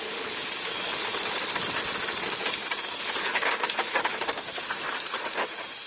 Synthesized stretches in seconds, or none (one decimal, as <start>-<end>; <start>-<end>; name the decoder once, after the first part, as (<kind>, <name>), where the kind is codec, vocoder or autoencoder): 3.3-4.6 (vocoder, BigVGAN v2)